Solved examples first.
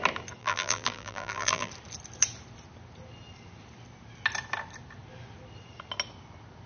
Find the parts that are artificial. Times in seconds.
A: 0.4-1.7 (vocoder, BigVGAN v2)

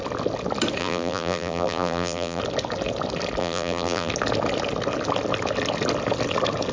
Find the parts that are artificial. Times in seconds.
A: 0.8-2.4 (vocoder, BigVGAN v2); 3.4-4.1

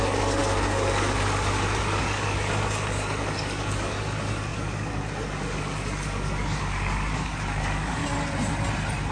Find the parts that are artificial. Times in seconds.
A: 0.0-8.0 (codec, DAC)